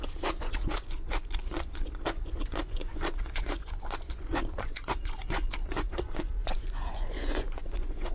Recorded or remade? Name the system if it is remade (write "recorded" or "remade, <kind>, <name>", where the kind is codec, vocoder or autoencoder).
remade, vocoder, Vocos